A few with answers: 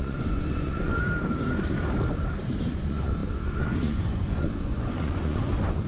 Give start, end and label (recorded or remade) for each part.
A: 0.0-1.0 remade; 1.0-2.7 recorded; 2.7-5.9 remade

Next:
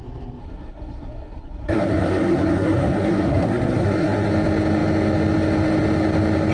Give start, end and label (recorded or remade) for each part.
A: 0.0-0.4 recorded; 0.4-4.3 remade; 4.3-6.5 recorded

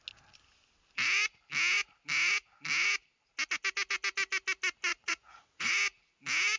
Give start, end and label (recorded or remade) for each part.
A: 0.0-4.9 recorded; 4.9-5.7 remade; 5.7-6.6 recorded